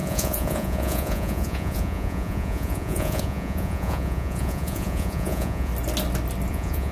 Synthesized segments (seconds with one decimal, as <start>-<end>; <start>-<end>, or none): 0.0-5.7; 6.5-6.9